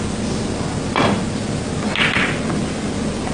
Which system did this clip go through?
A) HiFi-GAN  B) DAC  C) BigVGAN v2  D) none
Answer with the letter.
D